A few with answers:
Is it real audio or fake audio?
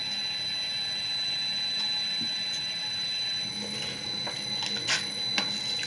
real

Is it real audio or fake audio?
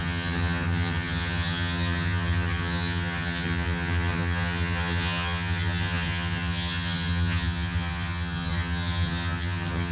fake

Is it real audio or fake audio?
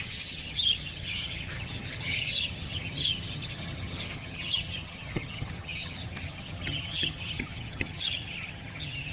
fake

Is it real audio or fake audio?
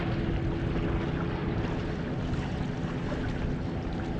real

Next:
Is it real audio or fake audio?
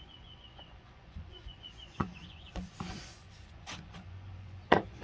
fake